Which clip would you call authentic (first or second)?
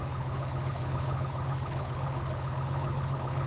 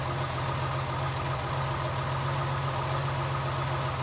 second